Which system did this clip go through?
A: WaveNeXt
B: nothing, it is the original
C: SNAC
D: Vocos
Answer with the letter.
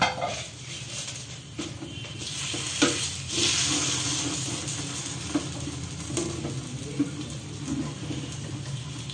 B